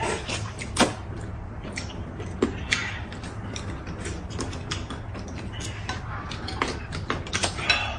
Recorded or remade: recorded